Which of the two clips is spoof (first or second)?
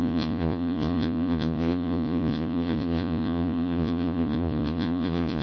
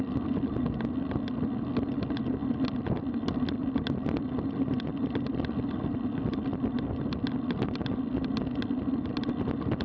first